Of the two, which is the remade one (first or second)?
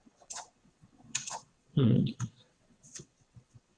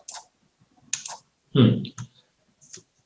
first